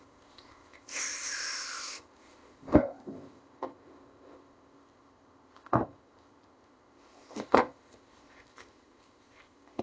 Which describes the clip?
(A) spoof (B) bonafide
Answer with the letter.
A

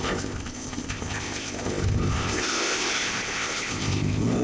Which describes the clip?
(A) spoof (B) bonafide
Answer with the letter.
A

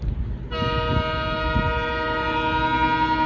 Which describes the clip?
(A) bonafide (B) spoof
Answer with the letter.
A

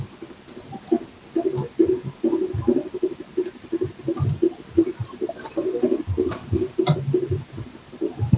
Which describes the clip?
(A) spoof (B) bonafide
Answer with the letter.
B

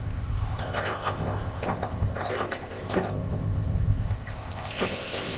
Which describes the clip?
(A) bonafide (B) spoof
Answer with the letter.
B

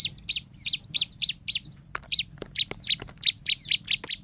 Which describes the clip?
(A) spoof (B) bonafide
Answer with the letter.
B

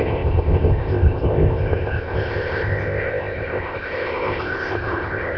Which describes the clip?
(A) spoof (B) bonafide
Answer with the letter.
A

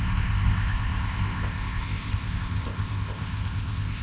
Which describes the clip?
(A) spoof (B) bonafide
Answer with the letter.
A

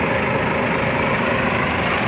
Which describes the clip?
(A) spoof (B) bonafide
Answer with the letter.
B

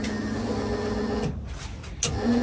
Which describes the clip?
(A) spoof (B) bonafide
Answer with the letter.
B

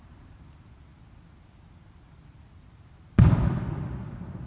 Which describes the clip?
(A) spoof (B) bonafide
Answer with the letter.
B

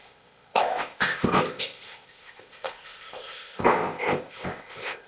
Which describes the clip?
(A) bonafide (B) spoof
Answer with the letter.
B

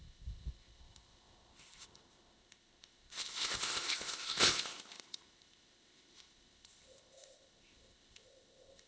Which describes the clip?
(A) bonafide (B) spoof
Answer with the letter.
B